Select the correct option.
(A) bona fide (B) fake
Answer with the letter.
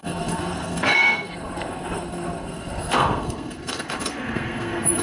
B